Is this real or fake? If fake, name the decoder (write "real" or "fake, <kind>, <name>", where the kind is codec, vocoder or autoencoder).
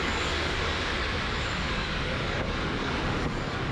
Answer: fake, codec, DAC